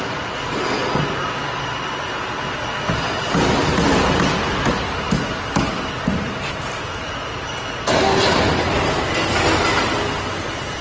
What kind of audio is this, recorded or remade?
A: recorded